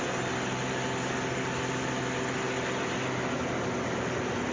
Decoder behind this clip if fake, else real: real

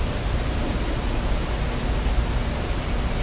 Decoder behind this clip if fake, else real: real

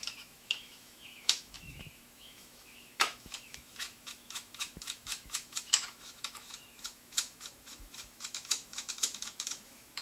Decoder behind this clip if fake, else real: fake, autoencoder, DAC-VAE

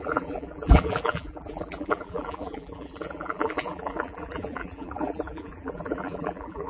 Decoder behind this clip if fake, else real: fake, vocoder, BigVGAN v2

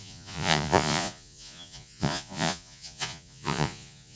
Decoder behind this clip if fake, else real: fake, vocoder, Vocos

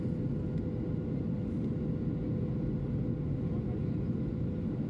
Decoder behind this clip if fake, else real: real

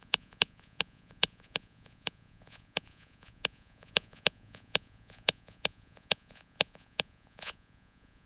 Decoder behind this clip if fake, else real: fake, vocoder, Vocos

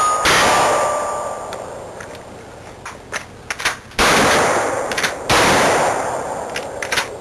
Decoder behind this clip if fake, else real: real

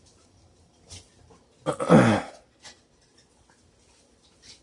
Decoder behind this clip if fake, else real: real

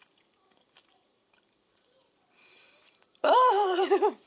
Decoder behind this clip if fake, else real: fake, vocoder, BigVGAN v2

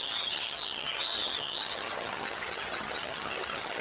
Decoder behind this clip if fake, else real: fake, vocoder, HiFi-GAN